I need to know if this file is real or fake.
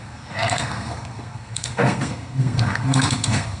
fake